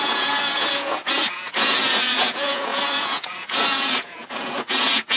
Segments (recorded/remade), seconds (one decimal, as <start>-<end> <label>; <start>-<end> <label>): 0.0-5.2 remade